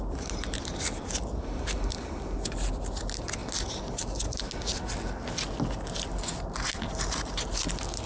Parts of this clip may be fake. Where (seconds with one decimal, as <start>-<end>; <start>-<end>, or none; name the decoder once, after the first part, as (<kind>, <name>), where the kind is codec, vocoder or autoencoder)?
none